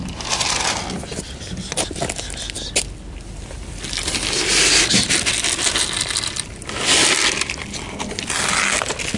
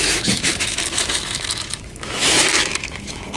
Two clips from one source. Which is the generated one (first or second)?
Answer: second